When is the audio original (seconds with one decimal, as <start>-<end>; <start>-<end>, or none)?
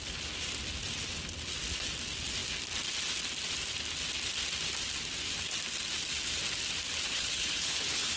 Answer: 0.0-7.1